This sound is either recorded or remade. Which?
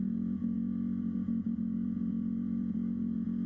remade